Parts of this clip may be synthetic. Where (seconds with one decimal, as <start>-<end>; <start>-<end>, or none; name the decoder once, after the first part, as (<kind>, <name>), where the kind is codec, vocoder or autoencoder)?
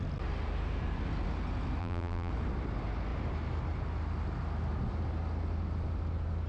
1.8-2.3 (vocoder, BigVGAN v2)